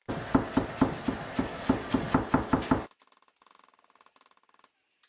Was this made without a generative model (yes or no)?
yes